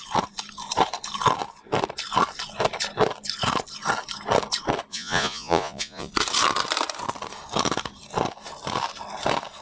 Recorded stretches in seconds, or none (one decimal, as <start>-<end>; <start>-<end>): 0.0-4.9; 6.1-9.6